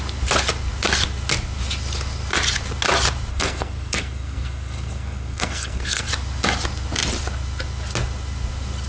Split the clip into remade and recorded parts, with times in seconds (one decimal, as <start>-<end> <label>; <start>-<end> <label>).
0.0-3.3 recorded; 3.3-6.1 remade; 6.1-8.9 recorded